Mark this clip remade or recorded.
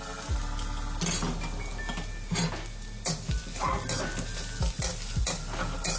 recorded